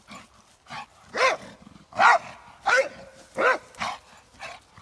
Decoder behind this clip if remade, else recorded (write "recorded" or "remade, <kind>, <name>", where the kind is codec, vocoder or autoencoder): recorded